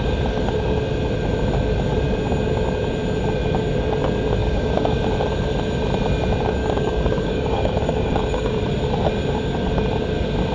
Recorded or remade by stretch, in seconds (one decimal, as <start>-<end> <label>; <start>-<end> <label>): 0.0-4.4 recorded; 4.4-5.0 remade; 5.0-6.6 recorded; 6.6-8.6 remade; 8.6-10.5 recorded